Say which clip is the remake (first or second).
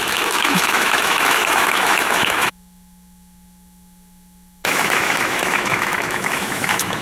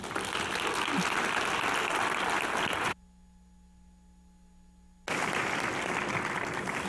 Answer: first